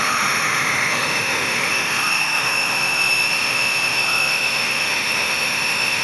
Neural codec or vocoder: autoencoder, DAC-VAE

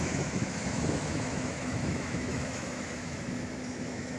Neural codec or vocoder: autoencoder, DAC-VAE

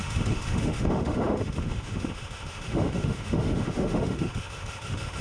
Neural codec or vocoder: autoencoder, DAC-VAE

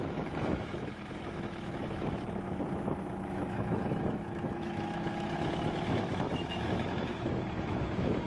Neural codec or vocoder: autoencoder, DAC-VAE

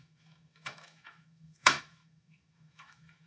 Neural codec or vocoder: autoencoder, DAC-VAE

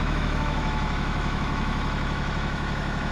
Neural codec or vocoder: autoencoder, DAC-VAE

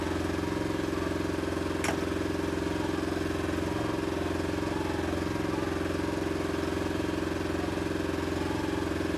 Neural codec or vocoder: none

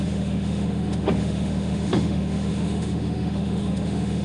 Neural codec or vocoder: autoencoder, DAC-VAE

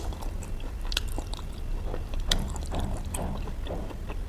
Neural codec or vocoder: none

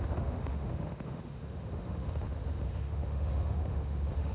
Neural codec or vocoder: autoencoder, DAC-VAE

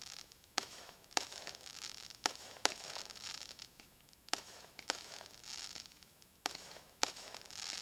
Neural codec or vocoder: autoencoder, DAC-VAE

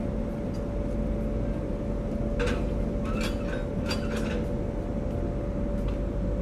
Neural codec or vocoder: none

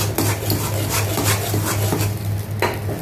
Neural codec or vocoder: none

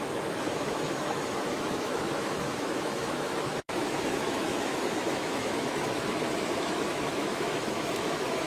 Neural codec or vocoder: autoencoder, DAC-VAE